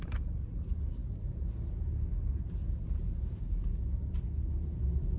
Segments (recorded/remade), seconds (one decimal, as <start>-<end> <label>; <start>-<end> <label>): 0.0-5.2 recorded